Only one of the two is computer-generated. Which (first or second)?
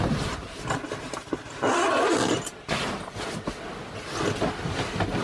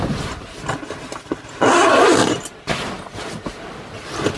second